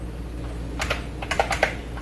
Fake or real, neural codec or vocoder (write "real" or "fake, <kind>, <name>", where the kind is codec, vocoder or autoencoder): real